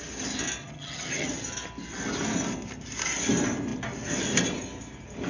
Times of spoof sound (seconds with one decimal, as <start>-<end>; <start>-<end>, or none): 0.6-1.3